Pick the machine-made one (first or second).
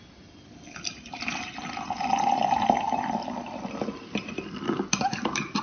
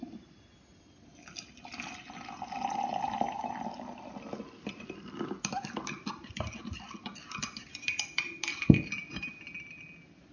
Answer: first